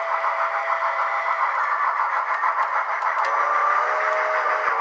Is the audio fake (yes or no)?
no